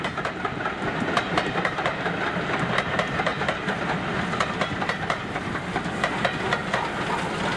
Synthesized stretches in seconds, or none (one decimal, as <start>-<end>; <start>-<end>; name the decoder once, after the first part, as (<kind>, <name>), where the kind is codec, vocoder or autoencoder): 3.3-4.1 (vocoder, BigVGAN v2)